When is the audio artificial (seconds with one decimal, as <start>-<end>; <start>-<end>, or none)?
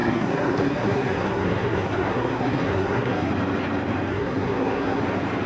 0.0-3.3; 4.1-5.0